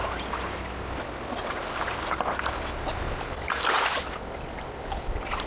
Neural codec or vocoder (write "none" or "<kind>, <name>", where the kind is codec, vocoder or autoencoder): none